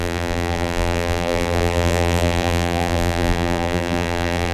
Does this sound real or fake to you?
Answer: fake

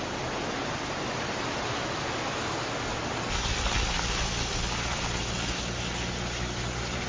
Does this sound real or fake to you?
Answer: real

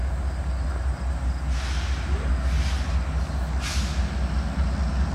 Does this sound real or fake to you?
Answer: real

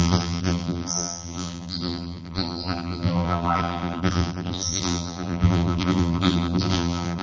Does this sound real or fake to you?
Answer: fake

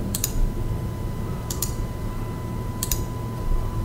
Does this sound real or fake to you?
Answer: fake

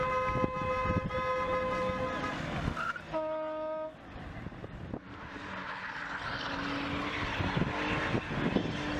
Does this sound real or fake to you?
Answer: real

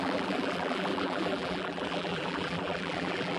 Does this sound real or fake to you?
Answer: fake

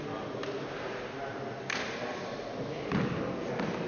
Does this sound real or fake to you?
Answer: real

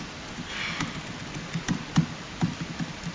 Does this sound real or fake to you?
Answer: real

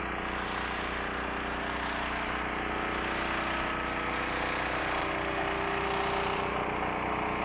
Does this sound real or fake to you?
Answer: real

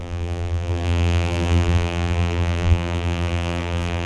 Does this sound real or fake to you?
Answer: fake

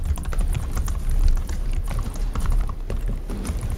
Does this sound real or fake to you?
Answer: fake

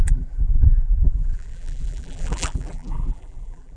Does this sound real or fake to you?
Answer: fake